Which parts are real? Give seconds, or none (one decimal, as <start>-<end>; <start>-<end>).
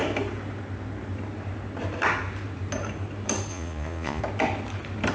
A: 0.0-3.5; 4.2-5.1